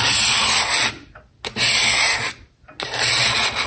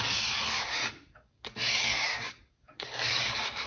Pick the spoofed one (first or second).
second